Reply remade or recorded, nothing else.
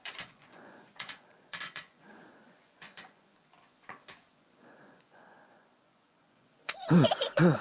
remade